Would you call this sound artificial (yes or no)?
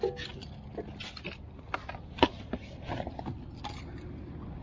no